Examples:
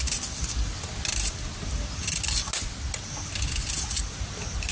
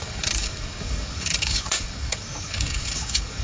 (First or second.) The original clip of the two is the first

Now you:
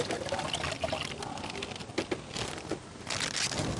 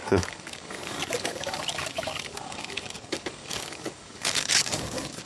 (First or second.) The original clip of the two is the first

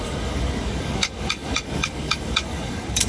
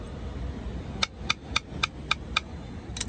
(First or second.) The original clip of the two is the second